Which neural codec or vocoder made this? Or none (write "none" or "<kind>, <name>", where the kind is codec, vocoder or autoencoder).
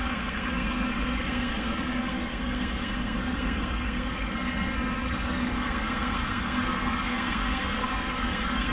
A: codec, SNAC